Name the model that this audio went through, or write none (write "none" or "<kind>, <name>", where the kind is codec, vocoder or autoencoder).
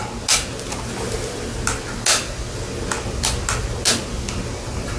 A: none